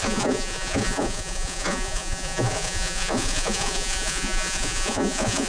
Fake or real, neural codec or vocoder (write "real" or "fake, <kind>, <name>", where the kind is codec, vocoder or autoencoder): fake, vocoder, Vocos